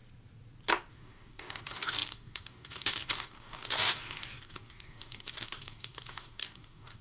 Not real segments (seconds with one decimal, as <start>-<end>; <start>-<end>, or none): 0.9-7.0